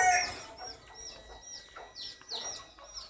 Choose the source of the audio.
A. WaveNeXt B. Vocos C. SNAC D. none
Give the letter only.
D